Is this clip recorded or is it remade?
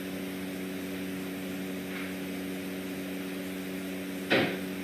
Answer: recorded